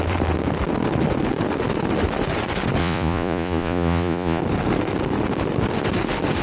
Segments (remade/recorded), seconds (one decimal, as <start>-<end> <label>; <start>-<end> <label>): 0.0-2.8 recorded; 2.8-4.4 remade; 4.4-6.4 recorded